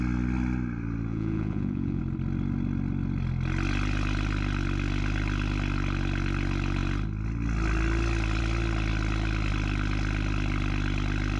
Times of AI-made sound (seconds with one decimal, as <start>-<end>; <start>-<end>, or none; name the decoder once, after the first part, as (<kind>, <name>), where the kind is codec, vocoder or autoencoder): 1.1-2.0 (vocoder, Vocos)